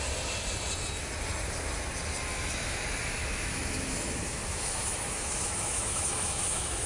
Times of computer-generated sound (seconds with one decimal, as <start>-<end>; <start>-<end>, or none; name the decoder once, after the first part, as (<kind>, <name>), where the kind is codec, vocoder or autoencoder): 2.3-2.8 (autoencoder, DAC-VAE); 3.2-6.9